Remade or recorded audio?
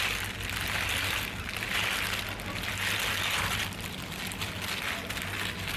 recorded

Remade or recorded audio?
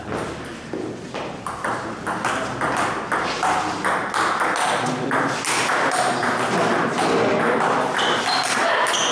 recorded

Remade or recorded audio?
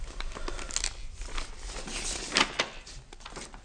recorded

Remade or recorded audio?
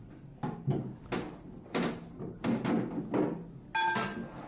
recorded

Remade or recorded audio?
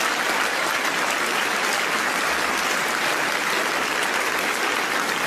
recorded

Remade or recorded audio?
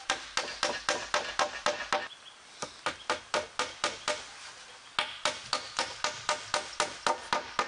recorded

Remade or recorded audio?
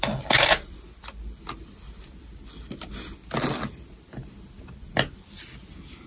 recorded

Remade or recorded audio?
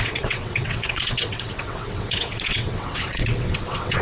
remade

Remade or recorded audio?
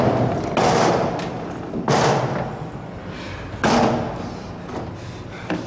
recorded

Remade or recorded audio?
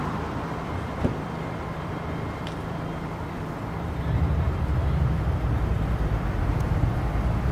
remade